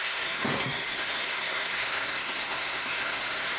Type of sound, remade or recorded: remade